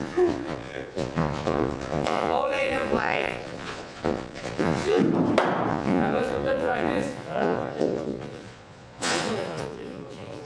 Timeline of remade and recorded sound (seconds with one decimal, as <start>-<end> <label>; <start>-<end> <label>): 0.0-5.0 remade; 5.0-5.7 recorded; 5.7-10.5 remade